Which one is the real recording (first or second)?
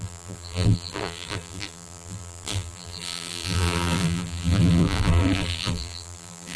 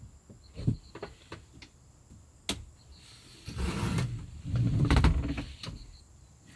second